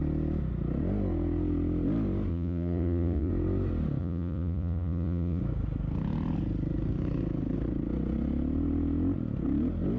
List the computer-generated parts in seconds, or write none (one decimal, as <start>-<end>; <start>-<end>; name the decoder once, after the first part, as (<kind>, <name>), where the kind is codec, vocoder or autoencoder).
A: 2.3-3.3 (vocoder, Vocos); 4.0-5.4